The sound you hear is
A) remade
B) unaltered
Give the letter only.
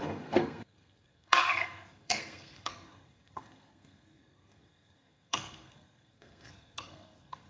A